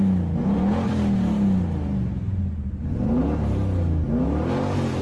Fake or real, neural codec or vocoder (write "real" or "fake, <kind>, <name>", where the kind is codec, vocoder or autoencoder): real